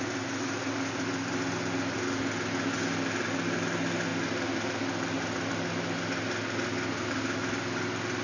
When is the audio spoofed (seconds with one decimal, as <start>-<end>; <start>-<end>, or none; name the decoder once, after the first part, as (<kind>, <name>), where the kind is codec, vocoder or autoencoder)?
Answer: none